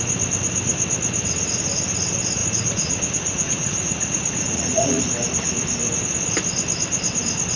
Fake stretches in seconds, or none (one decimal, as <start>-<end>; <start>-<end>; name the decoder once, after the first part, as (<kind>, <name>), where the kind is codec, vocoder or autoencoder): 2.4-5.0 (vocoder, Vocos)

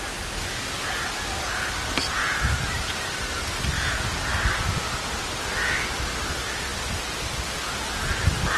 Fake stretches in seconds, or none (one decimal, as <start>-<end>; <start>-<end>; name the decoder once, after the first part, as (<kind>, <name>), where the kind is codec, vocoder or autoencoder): none

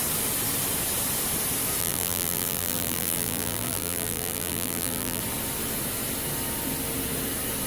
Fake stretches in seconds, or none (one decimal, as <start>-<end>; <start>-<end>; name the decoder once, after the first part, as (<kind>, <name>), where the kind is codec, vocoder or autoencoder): 1.8-5.2 (vocoder, BigVGAN v2)